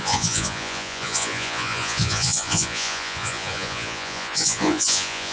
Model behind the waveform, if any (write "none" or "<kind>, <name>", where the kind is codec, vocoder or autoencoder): vocoder, Vocos